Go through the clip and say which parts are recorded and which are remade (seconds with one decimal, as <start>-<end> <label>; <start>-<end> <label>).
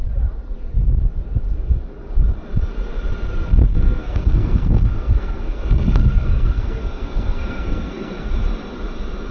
0.0-3.7 recorded; 3.7-8.3 remade; 8.3-9.3 recorded